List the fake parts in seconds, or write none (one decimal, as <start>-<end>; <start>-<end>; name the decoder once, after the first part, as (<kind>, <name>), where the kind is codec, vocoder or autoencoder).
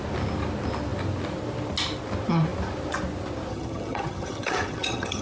3.5-5.2 (vocoder, HiFi-GAN)